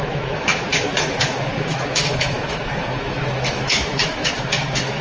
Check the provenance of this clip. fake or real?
fake